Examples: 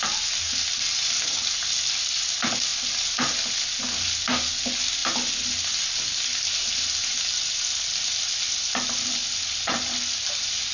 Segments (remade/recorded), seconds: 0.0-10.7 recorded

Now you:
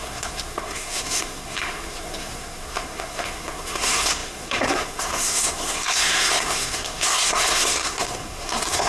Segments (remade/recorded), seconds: 0.0-8.9 remade

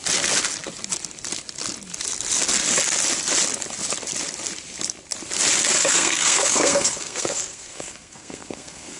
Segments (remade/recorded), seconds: 0.0-5.8 recorded; 5.8-9.0 remade